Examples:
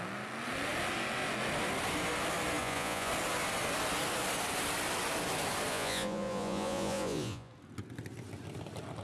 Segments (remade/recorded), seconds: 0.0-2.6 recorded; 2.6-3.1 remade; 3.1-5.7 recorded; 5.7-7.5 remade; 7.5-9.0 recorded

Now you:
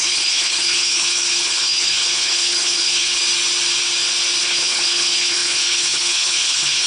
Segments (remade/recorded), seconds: 0.0-3.2 remade; 3.2-4.4 recorded; 4.4-6.9 remade

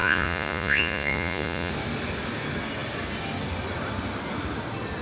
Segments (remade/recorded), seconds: 0.0-1.7 remade; 1.7-5.0 recorded

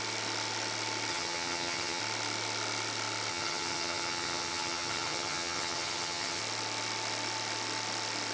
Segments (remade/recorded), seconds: 0.0-1.1 recorded; 1.1-2.0 remade; 2.0-3.3 recorded; 3.3-6.4 remade; 6.4-8.3 recorded

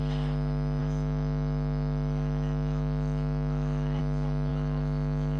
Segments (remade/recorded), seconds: 0.0-0.8 recorded; 0.8-4.0 remade; 4.0-4.5 recorded; 4.5-5.4 remade

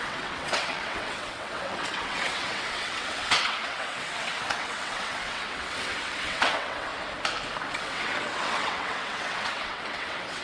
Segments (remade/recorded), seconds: 0.0-6.9 remade; 6.9-7.7 recorded; 7.7-10.4 remade

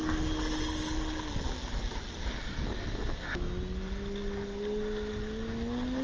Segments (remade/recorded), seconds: 0.0-6.0 recorded

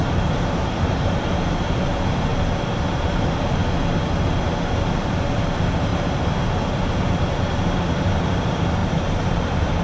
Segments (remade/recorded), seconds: 0.0-2.3 remade; 2.3-3.1 recorded; 3.1-3.6 remade; 3.6-4.7 recorded; 4.7-9.8 remade